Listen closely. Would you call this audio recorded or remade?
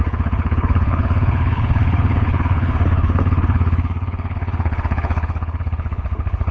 remade